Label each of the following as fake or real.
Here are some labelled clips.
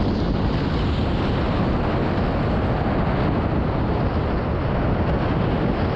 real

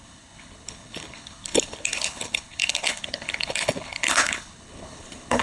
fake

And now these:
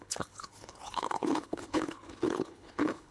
fake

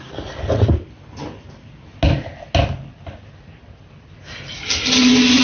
real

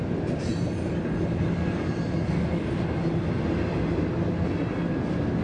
real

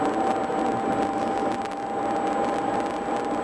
real